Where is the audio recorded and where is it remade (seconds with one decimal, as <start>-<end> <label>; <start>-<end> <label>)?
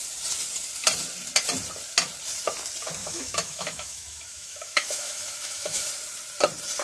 0.0-3.0 recorded; 3.0-5.9 remade; 5.9-6.8 recorded